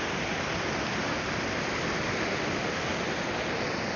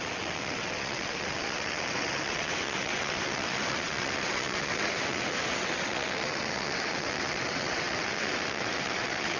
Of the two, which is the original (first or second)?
first